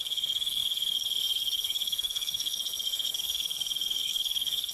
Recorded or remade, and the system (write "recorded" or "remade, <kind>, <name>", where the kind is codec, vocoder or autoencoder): remade, codec, SNAC